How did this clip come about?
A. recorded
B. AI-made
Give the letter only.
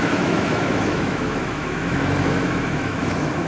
B